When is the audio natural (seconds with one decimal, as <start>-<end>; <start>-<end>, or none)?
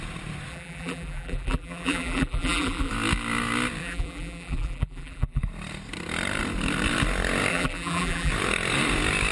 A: 0.0-0.5; 2.9-3.8; 5.4-7.5; 8.3-9.3